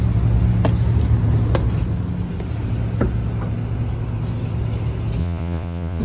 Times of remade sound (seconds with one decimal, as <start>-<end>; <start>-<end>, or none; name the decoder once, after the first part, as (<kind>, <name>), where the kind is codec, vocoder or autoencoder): 5.2-6.0 (vocoder, Vocos)